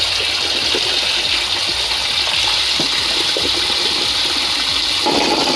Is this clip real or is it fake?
real